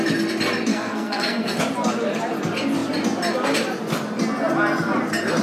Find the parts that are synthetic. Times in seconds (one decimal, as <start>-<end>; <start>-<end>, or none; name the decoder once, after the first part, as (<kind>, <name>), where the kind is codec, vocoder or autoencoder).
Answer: 0.7-1.6 (codec, SNAC)